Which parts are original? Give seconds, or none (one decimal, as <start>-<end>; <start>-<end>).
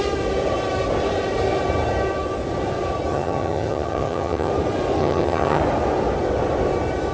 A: 0.0-3.1; 4.5-5.0; 5.6-7.1